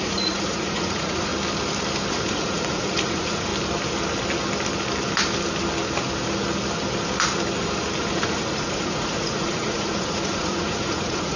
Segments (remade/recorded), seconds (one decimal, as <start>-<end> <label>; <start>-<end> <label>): 0.0-1.3 remade; 1.3-2.1 recorded; 2.1-3.5 remade; 3.5-8.0 recorded; 8.0-11.4 remade